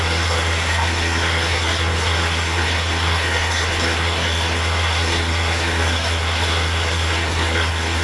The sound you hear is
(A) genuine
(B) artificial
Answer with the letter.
B